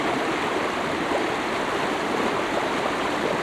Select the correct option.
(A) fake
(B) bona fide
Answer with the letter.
B